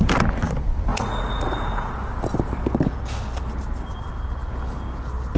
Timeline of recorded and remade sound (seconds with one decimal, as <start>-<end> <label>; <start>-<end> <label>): 0.0-0.9 recorded; 0.9-1.9 remade; 1.9-5.4 recorded